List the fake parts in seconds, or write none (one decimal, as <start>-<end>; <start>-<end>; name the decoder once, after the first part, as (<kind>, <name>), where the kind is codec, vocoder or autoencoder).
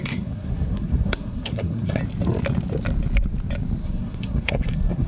0.0-2.0 (codec, SNAC); 3.8-5.1